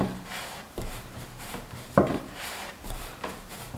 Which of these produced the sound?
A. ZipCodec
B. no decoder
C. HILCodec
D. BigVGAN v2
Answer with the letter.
D